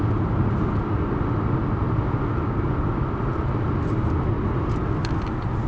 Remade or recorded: recorded